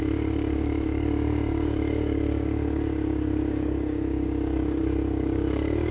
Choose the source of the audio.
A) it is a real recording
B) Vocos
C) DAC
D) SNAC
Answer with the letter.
C